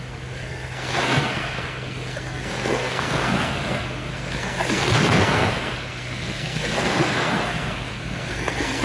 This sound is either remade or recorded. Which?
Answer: remade